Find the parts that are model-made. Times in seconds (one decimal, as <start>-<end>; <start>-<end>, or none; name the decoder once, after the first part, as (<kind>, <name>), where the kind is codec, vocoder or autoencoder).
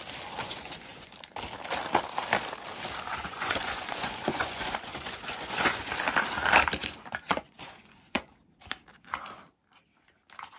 0.4-1.1 (vocoder, Vocos); 3.1-5.9; 6.8-8.3